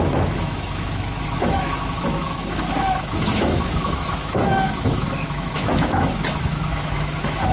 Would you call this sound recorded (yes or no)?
no